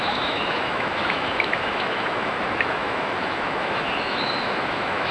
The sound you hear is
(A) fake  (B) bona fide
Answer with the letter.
A